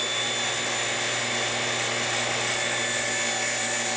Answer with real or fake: real